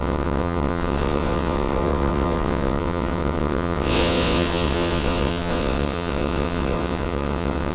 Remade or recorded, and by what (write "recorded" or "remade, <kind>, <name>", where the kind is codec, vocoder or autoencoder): remade, vocoder, WaveNeXt